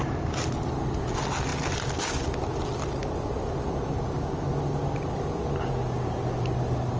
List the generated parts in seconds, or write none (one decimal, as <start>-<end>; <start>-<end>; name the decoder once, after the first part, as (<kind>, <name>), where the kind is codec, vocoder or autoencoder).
none